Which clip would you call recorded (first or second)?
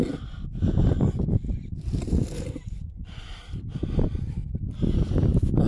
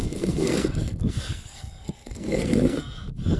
first